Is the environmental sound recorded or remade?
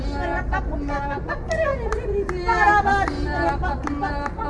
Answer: recorded